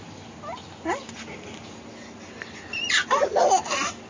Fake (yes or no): no